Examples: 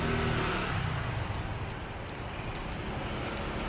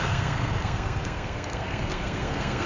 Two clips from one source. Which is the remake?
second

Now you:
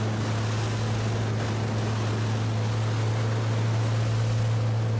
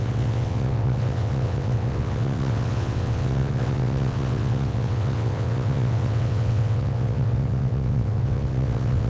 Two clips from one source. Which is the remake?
second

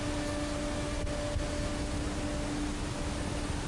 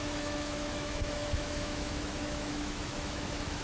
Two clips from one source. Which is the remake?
second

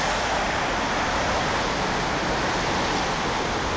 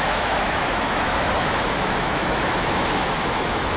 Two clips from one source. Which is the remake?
second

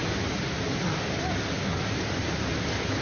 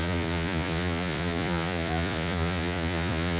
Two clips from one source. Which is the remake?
second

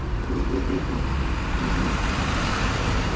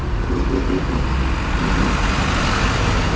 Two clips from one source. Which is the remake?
first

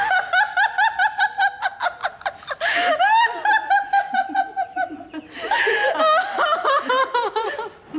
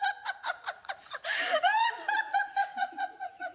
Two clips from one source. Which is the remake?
second